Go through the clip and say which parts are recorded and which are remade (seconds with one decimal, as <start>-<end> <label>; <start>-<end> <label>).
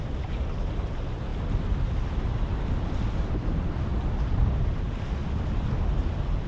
0.0-1.3 remade; 1.3-4.8 recorded; 4.8-5.2 remade; 5.2-6.0 recorded; 6.0-6.5 remade